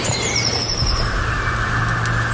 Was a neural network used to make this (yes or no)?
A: no